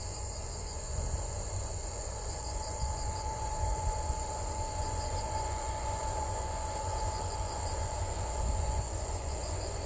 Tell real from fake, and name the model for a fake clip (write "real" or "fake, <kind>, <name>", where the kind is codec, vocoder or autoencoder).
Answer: fake, vocoder, Vocos